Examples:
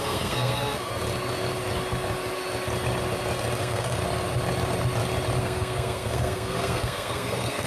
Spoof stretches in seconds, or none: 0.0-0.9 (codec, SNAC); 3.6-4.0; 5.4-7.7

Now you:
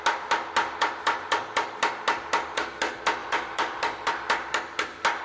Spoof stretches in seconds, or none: 3.2-4.1 (vocoder, BigVGAN v2)

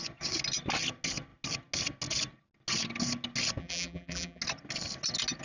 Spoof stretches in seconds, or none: 3.6-4.4 (vocoder, BigVGAN v2)

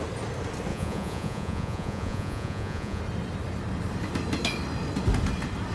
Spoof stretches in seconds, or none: 0.7-3.0 (vocoder, Vocos)

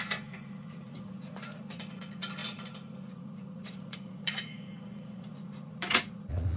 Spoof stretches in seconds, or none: 0.0-6.6 (vocoder, Vocos)

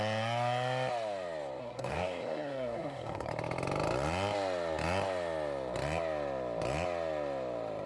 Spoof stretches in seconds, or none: 1.6-3.3 (codec, SNAC)

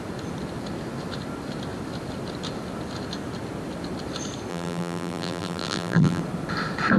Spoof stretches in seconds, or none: 4.5-6.2 (vocoder, BigVGAN v2)